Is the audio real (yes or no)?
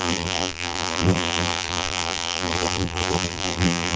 no